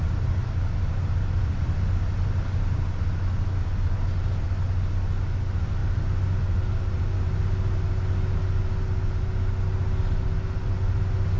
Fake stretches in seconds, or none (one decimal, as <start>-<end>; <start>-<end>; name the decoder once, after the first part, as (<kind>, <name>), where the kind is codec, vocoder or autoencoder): none